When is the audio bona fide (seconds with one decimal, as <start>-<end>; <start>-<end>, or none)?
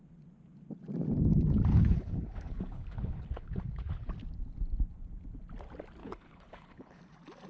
0.0-1.7; 4.1-6.0; 7.0-7.5